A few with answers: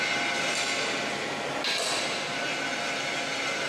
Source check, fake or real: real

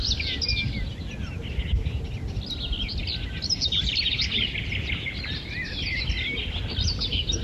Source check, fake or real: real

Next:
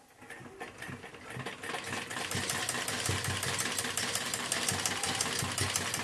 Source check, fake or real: real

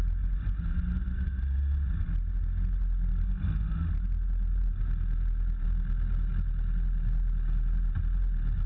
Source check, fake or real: real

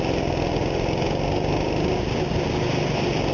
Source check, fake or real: real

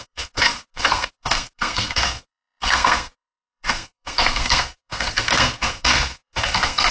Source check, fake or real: fake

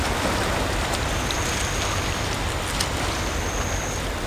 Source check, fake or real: real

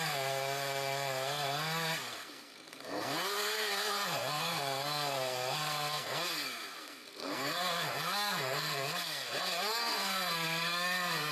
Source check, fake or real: fake